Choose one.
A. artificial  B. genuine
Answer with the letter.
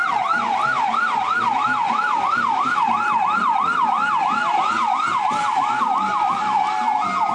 A